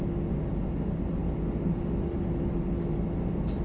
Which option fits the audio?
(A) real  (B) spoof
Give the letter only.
A